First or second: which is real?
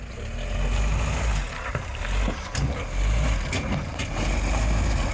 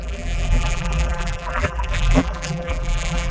first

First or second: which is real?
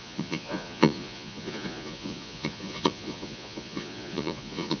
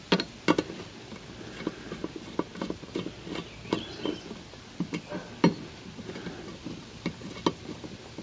second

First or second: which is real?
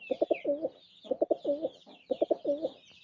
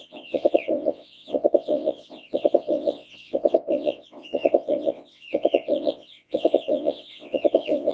first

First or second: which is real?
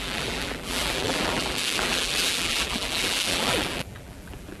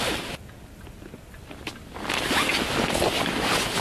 second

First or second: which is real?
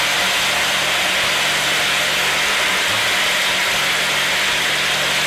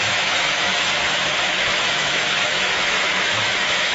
first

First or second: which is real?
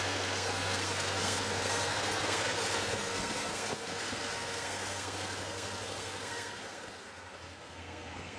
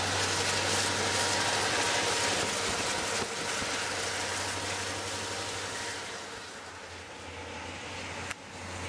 second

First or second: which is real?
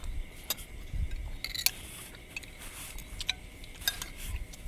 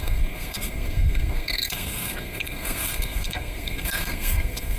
first